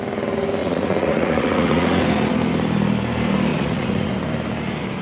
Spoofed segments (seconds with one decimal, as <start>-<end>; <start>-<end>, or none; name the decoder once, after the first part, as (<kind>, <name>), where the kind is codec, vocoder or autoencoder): 0.6-2.0 (vocoder, Vocos); 3.5-4.1

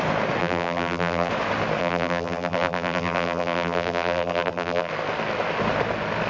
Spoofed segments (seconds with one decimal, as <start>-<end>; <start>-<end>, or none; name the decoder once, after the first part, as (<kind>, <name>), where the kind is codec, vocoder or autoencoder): 0.4-1.3 (vocoder, BigVGAN v2); 1.8-4.9

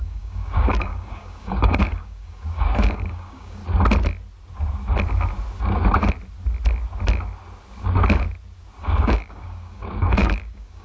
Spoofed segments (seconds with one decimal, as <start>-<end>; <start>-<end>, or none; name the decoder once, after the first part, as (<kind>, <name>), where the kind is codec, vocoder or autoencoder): 0.0-3.6 (codec, DAC); 8.8-10.8

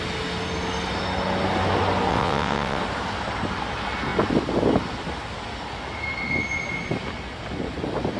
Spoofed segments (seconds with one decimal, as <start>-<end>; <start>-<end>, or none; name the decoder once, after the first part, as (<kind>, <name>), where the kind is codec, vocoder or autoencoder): 2.1-2.8 (vocoder, WaveNeXt)

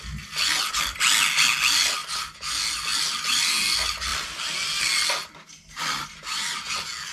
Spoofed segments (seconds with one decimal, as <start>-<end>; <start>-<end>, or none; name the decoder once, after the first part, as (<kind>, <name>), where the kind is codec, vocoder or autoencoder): 2.0-2.5 (vocoder, BigVGAN v2)